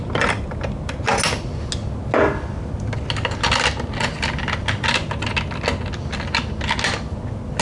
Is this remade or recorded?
recorded